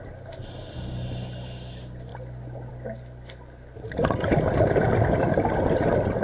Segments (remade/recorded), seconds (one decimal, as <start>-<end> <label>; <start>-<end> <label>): 0.0-6.2 recorded